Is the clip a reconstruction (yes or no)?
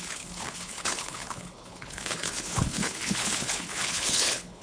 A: yes